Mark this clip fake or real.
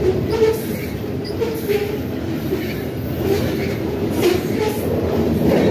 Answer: real